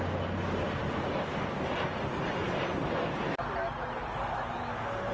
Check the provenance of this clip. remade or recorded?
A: recorded